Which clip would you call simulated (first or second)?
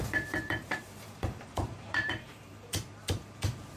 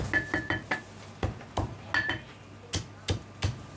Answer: first